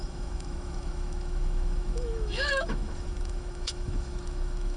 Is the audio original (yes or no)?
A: no